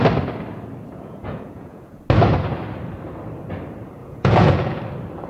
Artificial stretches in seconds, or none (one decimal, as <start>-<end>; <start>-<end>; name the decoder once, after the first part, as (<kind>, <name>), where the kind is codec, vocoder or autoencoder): 0.9-2.0 (vocoder, Vocos); 4.0-4.8